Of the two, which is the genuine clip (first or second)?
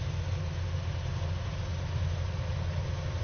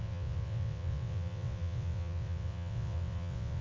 first